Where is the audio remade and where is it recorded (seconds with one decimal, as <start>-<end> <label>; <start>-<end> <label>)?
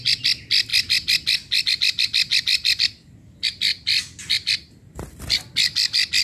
0.0-6.2 recorded